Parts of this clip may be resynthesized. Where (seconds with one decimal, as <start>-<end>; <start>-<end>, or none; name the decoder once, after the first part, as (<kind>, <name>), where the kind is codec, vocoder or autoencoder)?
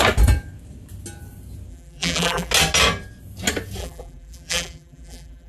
1.7-2.5 (vocoder, BigVGAN v2); 3.8-5.5